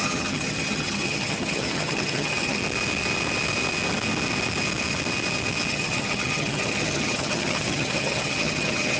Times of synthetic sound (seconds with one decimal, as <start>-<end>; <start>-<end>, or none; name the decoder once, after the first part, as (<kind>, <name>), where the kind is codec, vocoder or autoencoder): 0.0-2.6 (vocoder, HiFi-GAN); 5.7-9.0